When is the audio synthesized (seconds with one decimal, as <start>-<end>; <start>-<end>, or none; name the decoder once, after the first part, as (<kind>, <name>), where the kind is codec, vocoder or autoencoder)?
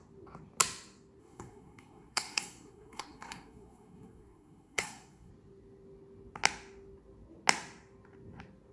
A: 1.2-5.3 (codec, SNAC)